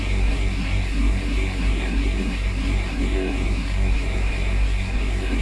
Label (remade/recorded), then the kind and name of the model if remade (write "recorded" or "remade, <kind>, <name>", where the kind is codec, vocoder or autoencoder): remade, codec, SNAC